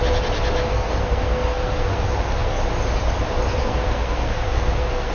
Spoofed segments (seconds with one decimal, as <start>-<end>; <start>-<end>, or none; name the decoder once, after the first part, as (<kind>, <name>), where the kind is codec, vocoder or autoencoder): 0.6-2.6 (codec, SNAC); 3.6-5.1